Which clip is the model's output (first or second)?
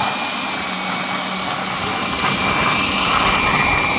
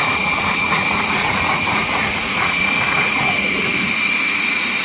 second